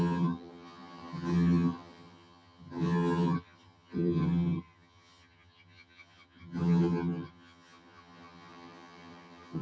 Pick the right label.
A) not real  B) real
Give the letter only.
A